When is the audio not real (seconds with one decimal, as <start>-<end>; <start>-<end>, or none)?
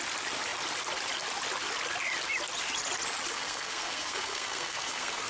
3.3-5.3